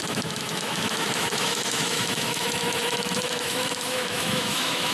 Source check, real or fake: fake